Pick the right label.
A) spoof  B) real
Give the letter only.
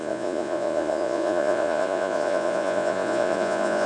A